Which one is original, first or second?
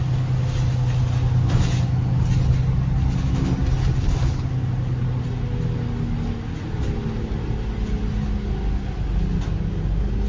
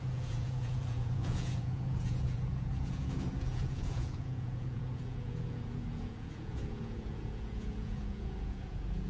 first